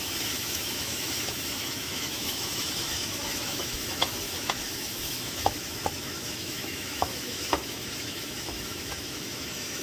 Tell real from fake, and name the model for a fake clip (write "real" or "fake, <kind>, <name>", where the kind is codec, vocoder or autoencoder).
fake, autoencoder, DAC-VAE